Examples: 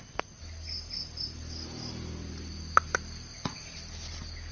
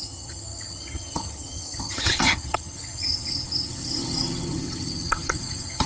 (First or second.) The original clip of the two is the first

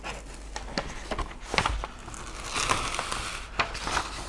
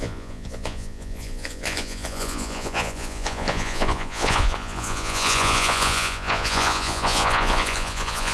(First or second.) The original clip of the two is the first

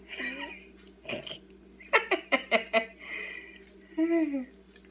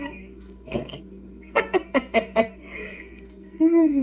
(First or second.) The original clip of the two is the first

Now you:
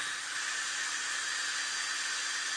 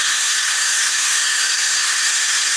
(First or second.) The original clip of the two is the first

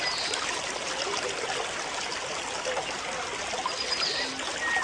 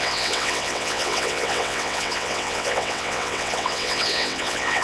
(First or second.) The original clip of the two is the first